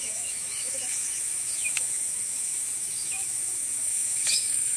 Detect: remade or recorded remade